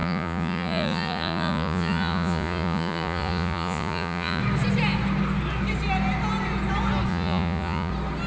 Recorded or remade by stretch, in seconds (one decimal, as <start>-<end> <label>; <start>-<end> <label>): 0.0-4.4 remade; 4.4-7.1 recorded; 7.1-7.9 remade; 7.9-8.3 recorded